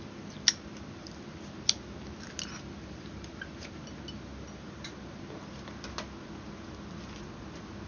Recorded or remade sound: recorded